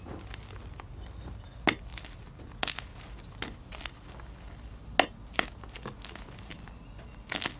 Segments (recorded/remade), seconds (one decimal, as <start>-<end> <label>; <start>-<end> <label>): 0.0-7.6 recorded